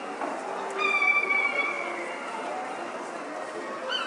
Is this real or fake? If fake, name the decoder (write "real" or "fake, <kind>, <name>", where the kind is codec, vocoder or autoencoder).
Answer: real